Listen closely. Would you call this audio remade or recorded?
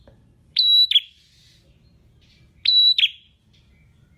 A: recorded